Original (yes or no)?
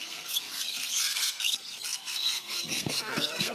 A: no